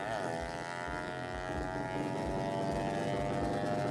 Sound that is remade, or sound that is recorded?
recorded